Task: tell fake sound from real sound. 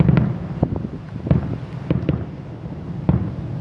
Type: real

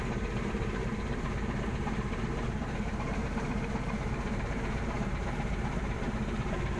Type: fake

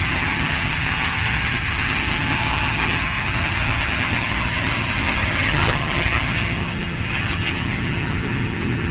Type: fake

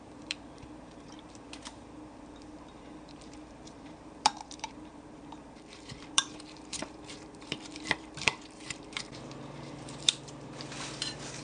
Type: fake